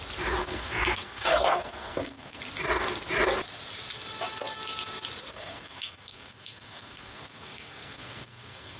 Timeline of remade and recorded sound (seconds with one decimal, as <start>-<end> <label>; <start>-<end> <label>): 0.0-0.4 recorded; 0.4-2.4 remade; 2.4-5.3 recorded; 5.3-8.8 remade

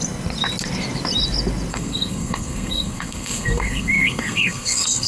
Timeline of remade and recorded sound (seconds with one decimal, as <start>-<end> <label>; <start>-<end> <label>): 0.0-1.7 recorded; 1.7-5.1 remade